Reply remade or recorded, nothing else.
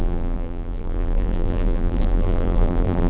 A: remade